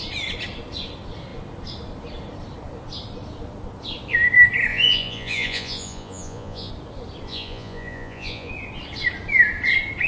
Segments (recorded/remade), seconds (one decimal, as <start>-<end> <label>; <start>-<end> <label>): 0.0-4.7 recorded; 4.7-6.7 remade; 6.7-7.3 recorded; 7.3-8.5 remade; 8.5-10.1 recorded